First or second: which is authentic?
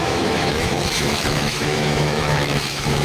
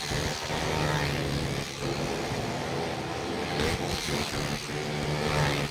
second